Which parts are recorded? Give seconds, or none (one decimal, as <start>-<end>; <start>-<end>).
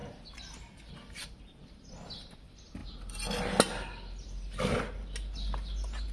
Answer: 0.0-6.1